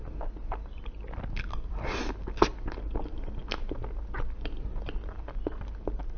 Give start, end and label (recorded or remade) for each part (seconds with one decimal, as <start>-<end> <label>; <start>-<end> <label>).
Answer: 0.0-6.2 recorded